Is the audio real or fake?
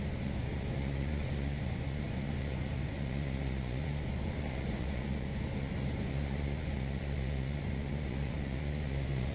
fake